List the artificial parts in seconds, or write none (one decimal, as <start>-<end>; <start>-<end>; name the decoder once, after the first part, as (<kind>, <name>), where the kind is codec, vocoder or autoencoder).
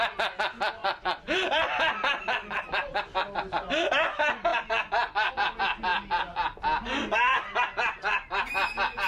0.8-3.0 (vocoder, BigVGAN v2)